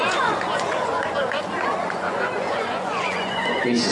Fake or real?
fake